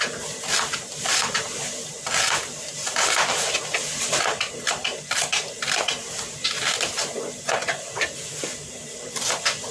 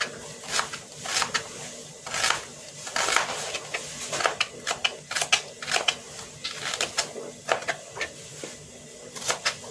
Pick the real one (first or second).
second